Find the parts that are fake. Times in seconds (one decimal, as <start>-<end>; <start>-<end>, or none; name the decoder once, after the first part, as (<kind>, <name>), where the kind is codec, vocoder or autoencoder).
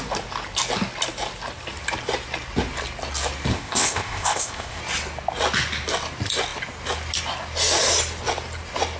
3.5-4.8 (codec, ZipCodec)